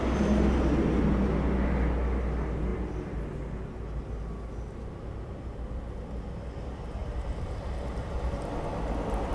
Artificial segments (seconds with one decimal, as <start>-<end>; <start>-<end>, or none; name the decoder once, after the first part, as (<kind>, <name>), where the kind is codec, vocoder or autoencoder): 7.0-8.2 (vocoder, BigVGAN v2)